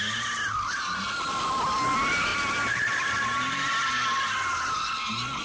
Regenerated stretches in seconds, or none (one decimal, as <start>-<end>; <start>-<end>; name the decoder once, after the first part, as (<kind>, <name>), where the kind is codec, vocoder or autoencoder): 2.3-3.7 (vocoder, BigVGAN v2)